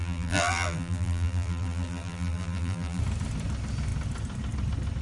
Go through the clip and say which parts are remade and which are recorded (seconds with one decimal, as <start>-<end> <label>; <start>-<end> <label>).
0.0-3.0 remade; 3.0-5.0 recorded